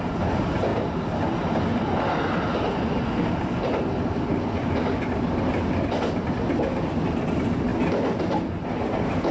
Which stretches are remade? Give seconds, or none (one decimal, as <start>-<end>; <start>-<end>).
none